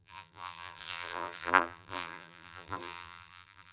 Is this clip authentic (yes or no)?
no